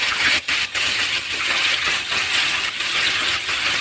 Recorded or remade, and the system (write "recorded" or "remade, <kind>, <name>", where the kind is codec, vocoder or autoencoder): remade, vocoder, HiFi-GAN